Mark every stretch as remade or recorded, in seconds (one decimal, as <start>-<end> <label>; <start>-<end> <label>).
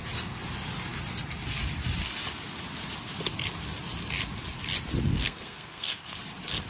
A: 0.0-5.1 recorded; 5.1-6.1 remade; 6.1-6.7 recorded